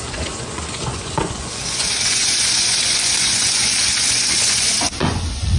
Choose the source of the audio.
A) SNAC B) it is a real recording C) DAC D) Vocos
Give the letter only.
D